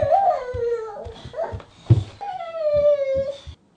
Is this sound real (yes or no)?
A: yes